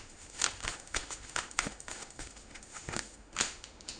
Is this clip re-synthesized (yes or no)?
yes